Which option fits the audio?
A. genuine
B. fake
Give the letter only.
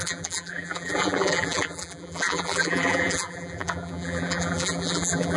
B